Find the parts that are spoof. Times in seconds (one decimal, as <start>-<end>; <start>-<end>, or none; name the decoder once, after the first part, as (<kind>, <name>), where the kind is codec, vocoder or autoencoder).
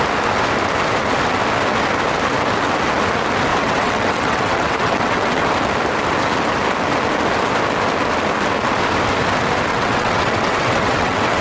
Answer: 3.5-5.5 (vocoder, WaveNeXt); 9.7-11.4